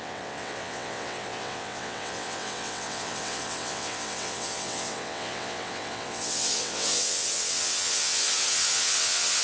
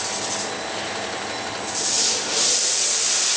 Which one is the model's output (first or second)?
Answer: first